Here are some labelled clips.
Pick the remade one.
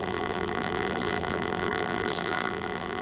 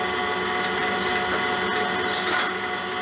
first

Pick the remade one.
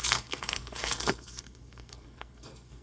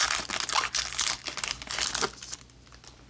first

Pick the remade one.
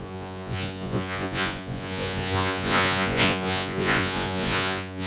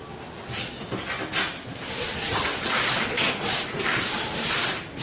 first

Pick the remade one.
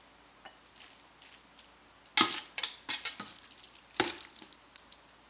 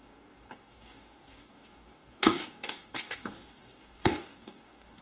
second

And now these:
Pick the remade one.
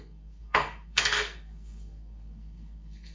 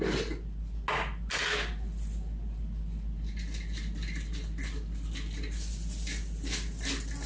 first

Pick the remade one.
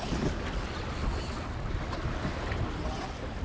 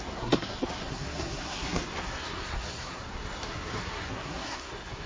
second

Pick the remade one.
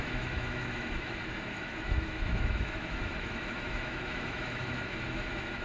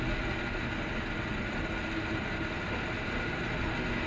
first